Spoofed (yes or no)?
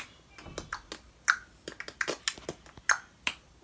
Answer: no